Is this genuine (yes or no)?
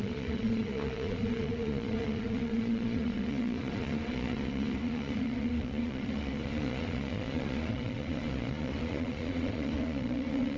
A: no